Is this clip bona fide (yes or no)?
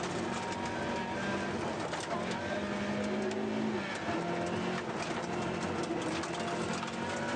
yes